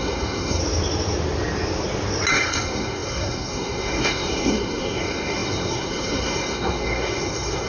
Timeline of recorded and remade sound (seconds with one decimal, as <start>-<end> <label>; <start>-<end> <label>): 0.0-0.6 remade; 0.6-2.3 recorded; 2.3-7.7 remade